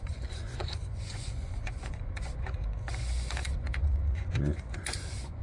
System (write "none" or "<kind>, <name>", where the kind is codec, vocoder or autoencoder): vocoder, Vocos